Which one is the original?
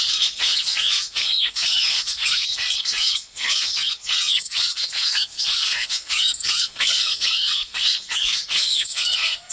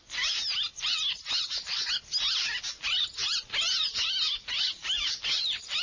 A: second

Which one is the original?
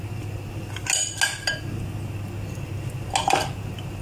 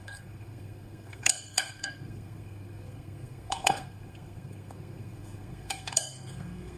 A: first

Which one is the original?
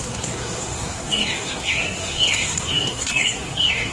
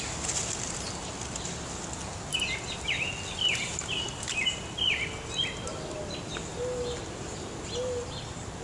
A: second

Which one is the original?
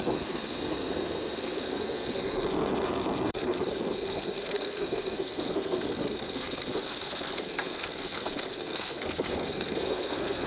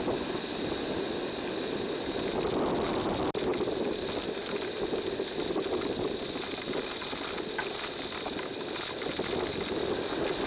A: second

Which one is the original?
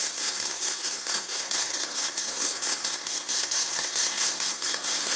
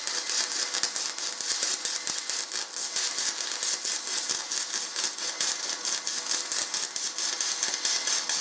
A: second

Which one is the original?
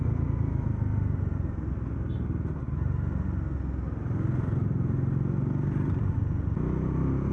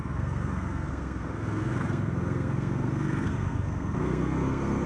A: first